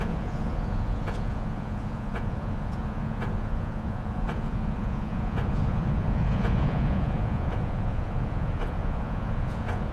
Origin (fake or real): fake